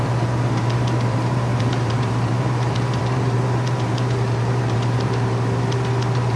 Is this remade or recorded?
remade